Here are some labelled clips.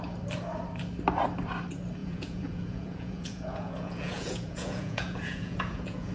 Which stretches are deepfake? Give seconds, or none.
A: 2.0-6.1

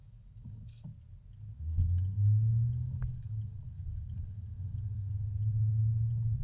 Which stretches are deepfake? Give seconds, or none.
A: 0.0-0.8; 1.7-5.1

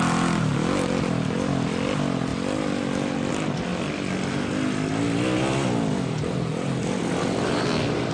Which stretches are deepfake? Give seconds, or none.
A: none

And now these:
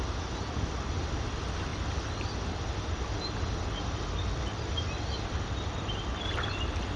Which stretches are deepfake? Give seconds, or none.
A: none

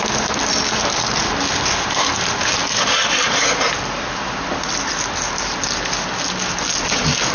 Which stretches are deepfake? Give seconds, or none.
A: none

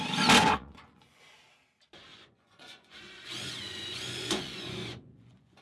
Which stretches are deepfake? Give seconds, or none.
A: 0.4-1.4; 2.1-5.6

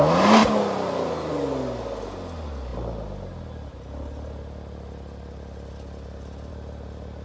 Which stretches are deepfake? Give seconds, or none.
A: none

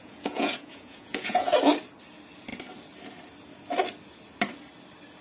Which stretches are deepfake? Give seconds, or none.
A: 0.0-1.6